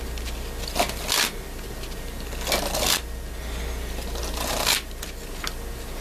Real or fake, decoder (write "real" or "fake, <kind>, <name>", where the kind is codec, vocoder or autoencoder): real